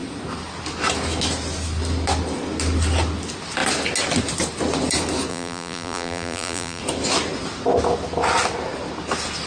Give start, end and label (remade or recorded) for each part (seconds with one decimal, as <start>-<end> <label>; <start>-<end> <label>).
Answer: 0.0-5.3 recorded; 5.3-6.8 remade; 6.8-9.5 recorded